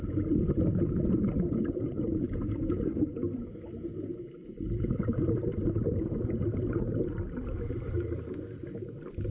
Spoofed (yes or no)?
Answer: yes